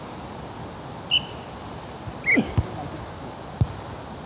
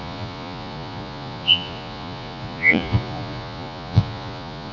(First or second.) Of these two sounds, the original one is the first